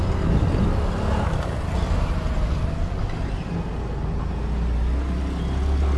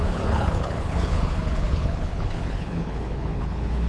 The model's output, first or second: second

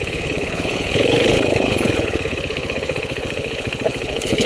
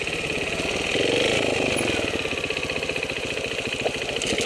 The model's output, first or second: first